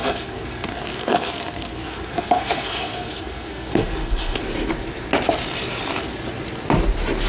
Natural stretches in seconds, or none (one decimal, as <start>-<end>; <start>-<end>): 4.4-7.3